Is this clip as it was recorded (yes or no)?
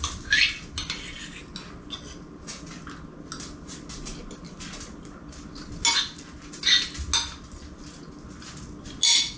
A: yes